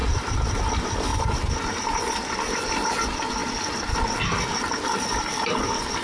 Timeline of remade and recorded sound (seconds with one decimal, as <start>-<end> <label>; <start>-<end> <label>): 0.0-6.0 recorded